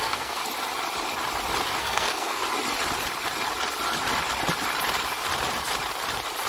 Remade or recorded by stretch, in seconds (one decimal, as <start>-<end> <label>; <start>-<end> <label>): 0.0-0.4 remade; 0.4-1.8 recorded; 1.8-2.4 remade; 2.4-6.5 recorded